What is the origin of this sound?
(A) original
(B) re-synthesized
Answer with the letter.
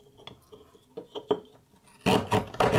A